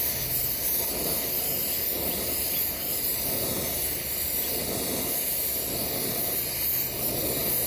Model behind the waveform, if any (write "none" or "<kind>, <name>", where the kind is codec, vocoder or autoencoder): none